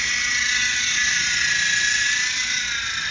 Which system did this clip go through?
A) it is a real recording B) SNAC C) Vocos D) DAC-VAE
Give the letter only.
A